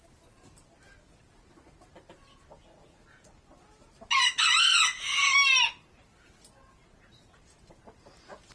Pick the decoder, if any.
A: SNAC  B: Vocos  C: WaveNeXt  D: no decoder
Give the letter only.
D